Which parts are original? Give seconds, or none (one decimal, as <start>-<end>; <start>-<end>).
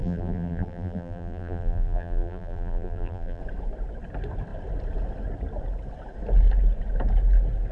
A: 3.4-7.7